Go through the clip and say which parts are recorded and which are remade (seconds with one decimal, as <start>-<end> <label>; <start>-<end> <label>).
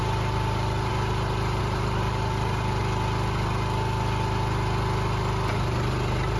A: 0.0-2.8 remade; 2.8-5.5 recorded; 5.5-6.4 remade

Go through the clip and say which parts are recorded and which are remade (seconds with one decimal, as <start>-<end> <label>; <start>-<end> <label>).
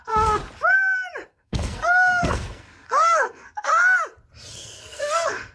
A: 0.0-0.4 remade; 0.4-1.3 recorded; 1.3-3.7 remade; 3.7-4.5 recorded; 4.5-5.5 remade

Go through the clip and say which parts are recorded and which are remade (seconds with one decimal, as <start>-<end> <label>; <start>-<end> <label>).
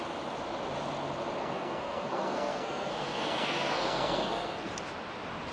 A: 0.0-1.4 recorded; 1.4-4.7 remade; 4.7-5.5 recorded